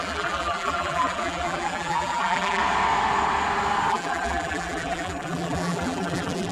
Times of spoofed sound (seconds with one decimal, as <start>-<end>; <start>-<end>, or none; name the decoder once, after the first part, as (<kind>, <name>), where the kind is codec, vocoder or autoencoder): 0.0-2.6 (vocoder, BigVGAN v2); 3.9-6.5